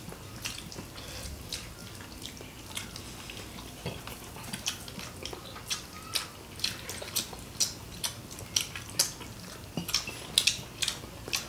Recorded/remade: recorded